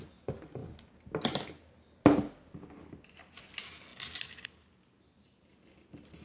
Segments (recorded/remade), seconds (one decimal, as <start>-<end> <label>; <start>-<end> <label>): 0.0-6.2 recorded

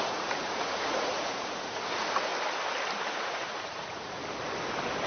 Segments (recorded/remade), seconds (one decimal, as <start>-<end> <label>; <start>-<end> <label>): 0.0-2.3 remade; 2.3-3.1 recorded; 3.1-4.2 remade; 4.2-5.1 recorded